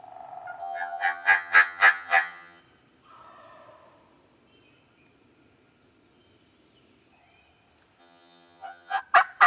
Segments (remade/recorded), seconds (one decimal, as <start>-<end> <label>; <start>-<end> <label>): 0.0-0.6 recorded; 0.6-2.6 remade; 2.6-8.0 recorded; 8.0-9.0 remade; 9.0-9.5 recorded